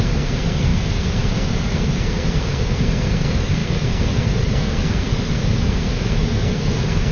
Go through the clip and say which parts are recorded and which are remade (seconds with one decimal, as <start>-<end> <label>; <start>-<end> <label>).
0.0-7.1 remade